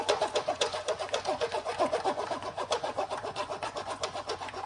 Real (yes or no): no